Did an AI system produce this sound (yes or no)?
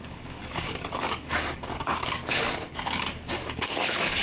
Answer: yes